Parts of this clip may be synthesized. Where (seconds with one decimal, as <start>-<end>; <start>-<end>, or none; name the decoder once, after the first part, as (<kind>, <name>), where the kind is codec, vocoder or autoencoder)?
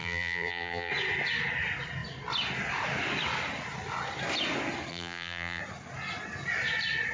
0.0-0.9 (vocoder, BigVGAN v2); 4.9-5.6